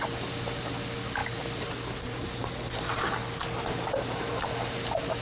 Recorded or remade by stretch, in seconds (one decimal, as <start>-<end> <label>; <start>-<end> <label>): 0.0-5.2 recorded